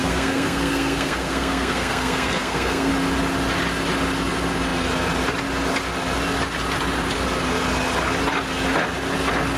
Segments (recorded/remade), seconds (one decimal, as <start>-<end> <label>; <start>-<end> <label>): 0.0-2.9 remade; 2.9-9.6 recorded